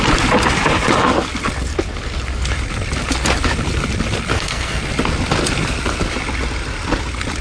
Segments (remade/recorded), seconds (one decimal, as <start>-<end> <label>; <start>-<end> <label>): 0.0-4.3 recorded; 4.3-4.8 remade; 4.8-7.4 recorded